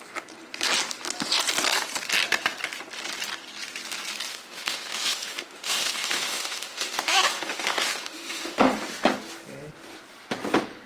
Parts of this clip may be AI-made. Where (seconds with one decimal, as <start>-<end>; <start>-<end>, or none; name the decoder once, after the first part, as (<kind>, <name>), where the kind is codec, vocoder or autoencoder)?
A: 4.3-8.7 (autoencoder, DAC-VAE)